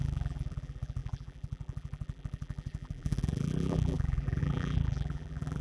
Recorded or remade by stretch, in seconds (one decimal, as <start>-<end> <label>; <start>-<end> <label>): 0.0-5.6 remade